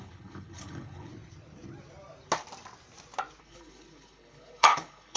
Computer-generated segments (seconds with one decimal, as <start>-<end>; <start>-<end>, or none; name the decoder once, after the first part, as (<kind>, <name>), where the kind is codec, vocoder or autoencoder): 0.0-1.1 (codec, HILCodec); 3.4-5.2